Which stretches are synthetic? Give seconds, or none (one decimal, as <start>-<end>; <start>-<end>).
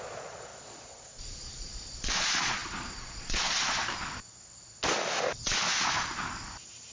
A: 0.0-3.8